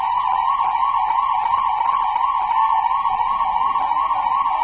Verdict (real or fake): real